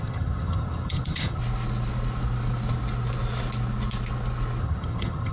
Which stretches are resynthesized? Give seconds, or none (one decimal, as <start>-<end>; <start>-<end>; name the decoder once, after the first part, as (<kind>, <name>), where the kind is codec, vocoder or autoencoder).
0.0-1.4 (vocoder, HiFi-GAN); 4.6-5.3